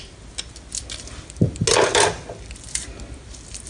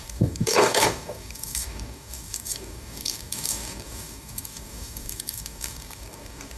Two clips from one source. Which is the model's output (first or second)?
second